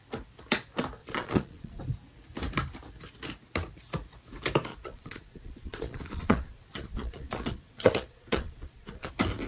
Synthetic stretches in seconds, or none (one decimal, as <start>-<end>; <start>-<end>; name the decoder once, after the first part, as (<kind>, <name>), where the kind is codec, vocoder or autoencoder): 1.0-1.8 (vocoder, Vocos); 4.7-9.1